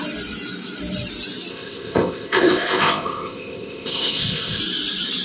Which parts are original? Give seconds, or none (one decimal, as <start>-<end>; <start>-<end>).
0.0-1.5; 4.6-5.2